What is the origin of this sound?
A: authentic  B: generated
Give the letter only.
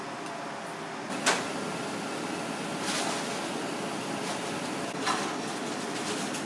A